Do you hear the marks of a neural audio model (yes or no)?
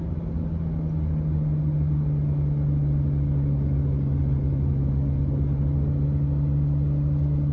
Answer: no